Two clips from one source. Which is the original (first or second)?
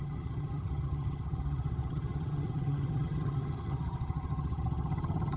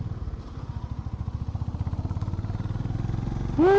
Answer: second